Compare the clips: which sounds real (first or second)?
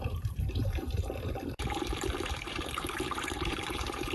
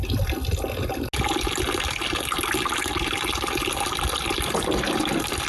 second